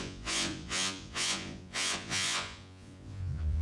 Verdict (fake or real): fake